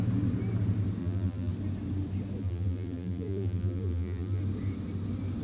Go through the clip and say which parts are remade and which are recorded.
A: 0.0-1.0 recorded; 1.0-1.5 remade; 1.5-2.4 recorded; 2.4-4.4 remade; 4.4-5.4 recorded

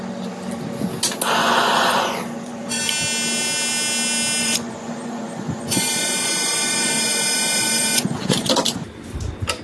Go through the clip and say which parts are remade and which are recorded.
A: 0.0-1.4 recorded; 1.4-2.8 remade; 2.8-4.4 recorded; 4.4-8.5 remade; 8.5-9.6 recorded